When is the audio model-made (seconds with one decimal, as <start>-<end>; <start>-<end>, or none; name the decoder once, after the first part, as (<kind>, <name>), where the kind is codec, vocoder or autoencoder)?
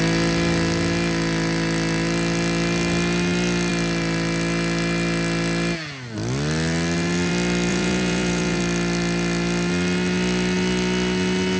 7.7-8.6 (vocoder, Vocos)